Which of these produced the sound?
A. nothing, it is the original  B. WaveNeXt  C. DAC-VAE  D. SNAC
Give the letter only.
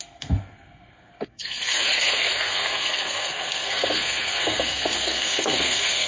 D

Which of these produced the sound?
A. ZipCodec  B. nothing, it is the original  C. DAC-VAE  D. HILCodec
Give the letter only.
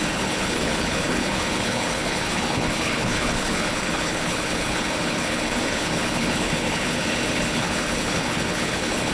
D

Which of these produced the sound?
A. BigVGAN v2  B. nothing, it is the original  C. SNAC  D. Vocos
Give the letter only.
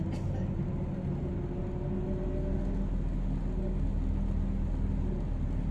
B